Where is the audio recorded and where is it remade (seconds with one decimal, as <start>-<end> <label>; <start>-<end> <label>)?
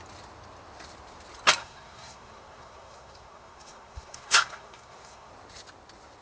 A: 0.0-1.6 recorded; 1.6-5.3 remade; 5.3-6.2 recorded